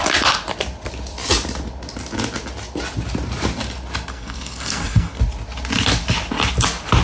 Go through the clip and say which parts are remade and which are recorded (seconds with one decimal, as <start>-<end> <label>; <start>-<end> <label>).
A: 0.0-4.1 recorded; 4.1-5.2 remade; 5.2-7.0 recorded